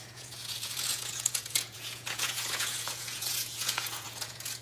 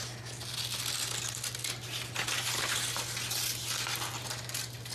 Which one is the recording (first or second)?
second